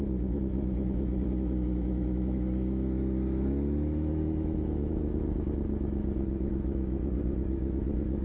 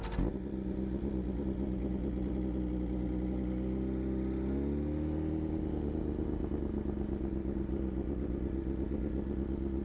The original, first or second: second